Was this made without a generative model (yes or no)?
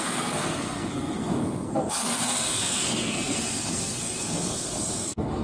no